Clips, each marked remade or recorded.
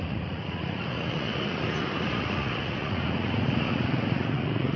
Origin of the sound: remade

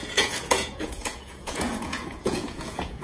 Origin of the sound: remade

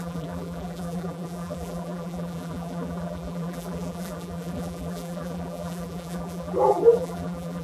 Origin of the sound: remade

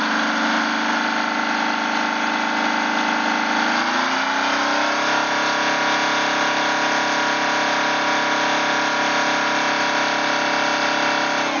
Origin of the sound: recorded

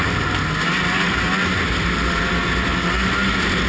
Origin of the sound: recorded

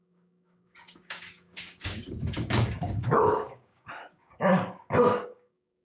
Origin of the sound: remade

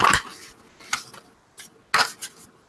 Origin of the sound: recorded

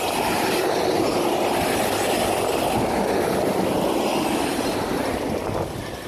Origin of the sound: recorded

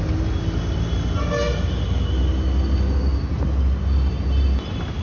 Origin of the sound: recorded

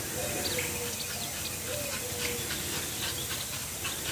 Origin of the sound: recorded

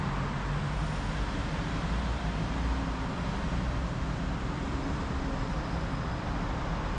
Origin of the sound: recorded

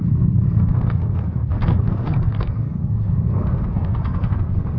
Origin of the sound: remade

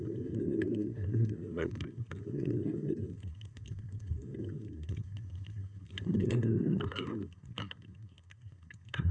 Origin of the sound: remade